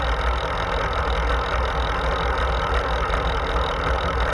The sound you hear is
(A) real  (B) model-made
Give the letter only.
A